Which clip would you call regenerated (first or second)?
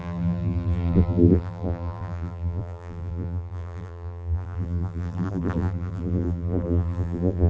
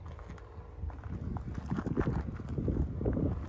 first